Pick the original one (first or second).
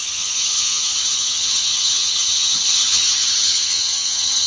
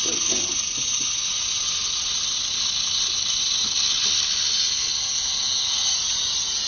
second